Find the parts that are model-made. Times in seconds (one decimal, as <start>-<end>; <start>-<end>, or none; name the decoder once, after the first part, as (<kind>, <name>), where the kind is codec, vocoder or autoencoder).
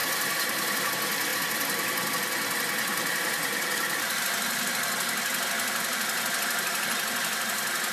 0.0-0.9 (vocoder, BigVGAN v2); 2.9-4.7